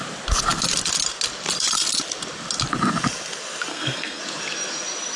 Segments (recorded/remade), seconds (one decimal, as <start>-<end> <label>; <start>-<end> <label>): 0.0-3.7 recorded; 3.7-4.2 remade; 4.2-5.2 recorded